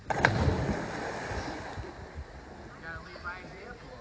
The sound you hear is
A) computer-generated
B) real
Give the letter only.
B